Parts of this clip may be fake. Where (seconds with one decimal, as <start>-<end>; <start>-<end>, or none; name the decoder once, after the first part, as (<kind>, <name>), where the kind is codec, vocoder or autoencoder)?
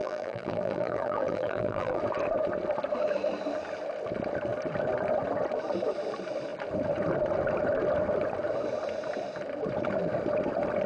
0.0-2.0 (vocoder, BigVGAN v2)